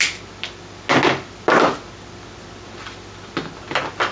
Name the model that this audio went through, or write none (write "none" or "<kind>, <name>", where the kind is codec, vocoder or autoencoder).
none